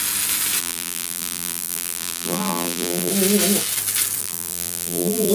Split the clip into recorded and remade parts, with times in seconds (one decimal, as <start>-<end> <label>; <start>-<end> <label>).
0.0-0.6 recorded; 0.6-3.1 remade; 3.1-4.2 recorded; 4.2-5.3 remade